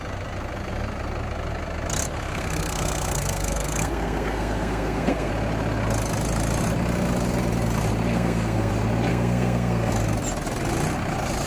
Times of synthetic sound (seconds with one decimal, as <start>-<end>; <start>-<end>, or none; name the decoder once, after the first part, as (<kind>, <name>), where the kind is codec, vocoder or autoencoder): 2.3-5.3 (codec, SNAC); 8.1-8.7; 9.1-9.9